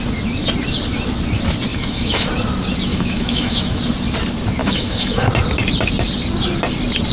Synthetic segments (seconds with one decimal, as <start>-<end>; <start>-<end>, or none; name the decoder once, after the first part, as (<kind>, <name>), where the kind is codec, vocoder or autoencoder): 1.7-2.3 (autoencoder, DAC-VAE); 2.9-3.8; 4.6-5.3